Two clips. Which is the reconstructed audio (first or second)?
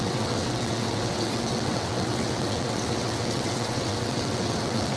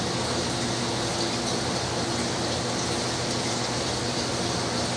first